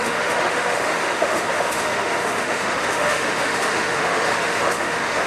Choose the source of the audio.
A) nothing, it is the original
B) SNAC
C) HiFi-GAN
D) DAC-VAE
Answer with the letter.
D